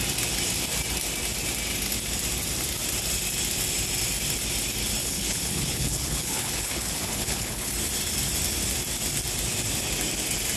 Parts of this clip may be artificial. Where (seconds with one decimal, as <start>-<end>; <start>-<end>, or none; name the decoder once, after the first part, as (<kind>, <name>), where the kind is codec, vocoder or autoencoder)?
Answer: 5.0-7.7 (codec, HILCodec)